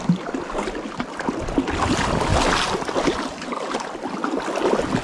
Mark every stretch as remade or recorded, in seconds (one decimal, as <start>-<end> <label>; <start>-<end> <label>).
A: 0.0-5.0 recorded